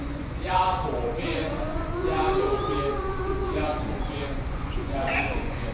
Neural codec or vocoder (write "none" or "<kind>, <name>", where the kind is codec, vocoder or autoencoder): vocoder, Vocos